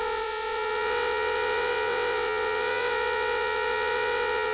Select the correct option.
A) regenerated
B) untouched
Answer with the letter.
A